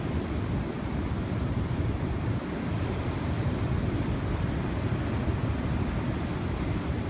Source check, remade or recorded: recorded